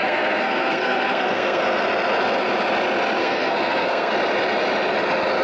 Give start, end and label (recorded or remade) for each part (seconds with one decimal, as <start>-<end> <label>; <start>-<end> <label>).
0.0-1.6 remade; 1.6-3.2 recorded; 3.2-4.1 remade; 4.1-5.4 recorded